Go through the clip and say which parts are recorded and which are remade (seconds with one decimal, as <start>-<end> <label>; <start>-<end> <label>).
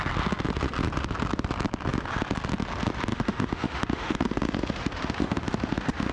0.0-3.1 recorded; 3.1-6.1 remade